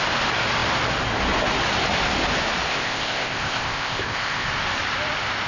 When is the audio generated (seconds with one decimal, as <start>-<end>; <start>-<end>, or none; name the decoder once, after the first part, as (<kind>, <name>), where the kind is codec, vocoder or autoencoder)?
2.7-4.5 (codec, ZipCodec)